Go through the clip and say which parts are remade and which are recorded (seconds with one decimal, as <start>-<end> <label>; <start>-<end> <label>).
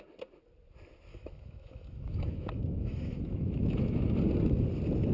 0.0-1.1 recorded; 1.1-4.2 remade; 4.2-5.1 recorded